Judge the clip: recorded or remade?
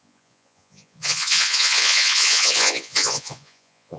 remade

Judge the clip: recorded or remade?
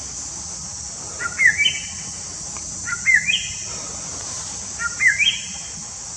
recorded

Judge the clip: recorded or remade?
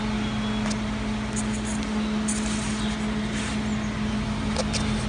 recorded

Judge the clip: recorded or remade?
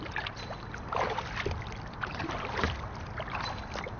recorded